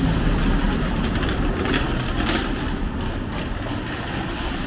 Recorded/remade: recorded